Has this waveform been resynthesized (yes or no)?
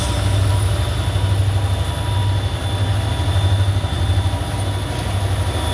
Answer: no